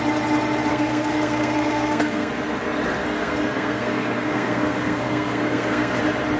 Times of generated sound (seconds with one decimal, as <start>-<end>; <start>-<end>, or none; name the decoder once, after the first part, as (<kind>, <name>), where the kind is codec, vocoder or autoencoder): 0.7-2.3 (codec, SNAC); 3.0-6.0